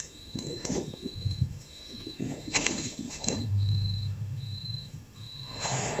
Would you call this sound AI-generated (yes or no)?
yes